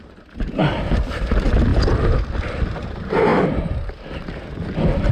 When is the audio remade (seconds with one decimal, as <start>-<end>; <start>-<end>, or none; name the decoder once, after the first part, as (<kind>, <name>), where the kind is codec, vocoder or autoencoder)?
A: 0.0-1.7 (vocoder, BigVGAN v2); 2.6-3.3; 4.6-5.1